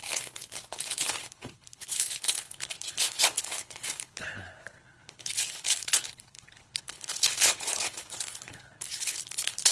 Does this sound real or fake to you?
fake